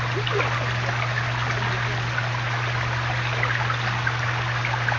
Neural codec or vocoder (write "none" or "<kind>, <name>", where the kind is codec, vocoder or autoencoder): none